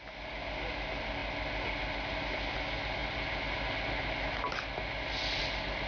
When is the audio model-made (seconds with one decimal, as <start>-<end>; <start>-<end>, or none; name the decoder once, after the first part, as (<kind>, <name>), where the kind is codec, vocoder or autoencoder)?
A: none